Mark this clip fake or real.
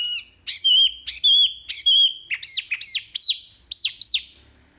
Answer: real